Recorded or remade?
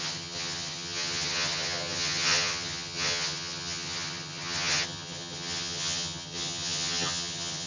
remade